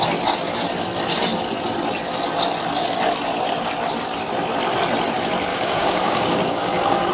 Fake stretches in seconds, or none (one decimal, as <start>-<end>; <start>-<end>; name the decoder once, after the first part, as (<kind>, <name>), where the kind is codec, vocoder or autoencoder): 5.5-7.1 (codec, DAC)